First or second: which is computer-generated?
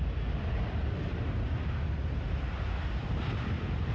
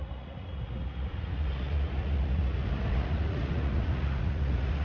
second